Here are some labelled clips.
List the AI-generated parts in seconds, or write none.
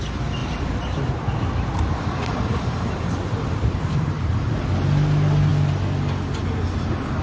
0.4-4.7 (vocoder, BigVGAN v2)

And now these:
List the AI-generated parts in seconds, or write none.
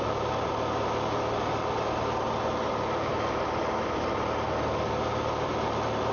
none